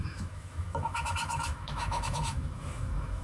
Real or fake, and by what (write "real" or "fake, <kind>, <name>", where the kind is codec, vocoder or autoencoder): fake, autoencoder, DAC-VAE